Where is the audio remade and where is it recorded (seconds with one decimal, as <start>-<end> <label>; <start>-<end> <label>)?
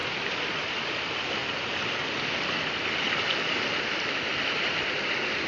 0.0-5.5 recorded